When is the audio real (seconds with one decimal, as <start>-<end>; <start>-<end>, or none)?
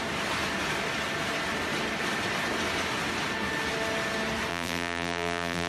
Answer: 0.0-4.5